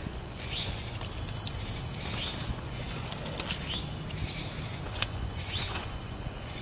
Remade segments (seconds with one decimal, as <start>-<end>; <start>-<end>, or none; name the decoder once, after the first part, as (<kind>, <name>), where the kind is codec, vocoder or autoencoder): 0.0-1.0 (vocoder, Vocos); 2.4-3.1; 4.7-6.6